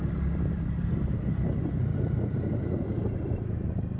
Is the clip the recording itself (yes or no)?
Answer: yes